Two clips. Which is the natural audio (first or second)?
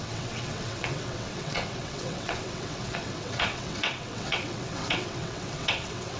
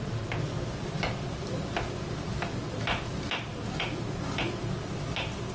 second